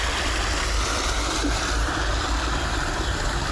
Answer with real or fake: fake